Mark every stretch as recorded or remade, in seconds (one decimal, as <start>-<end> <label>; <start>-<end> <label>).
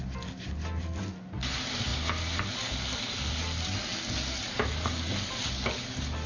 0.0-6.3 recorded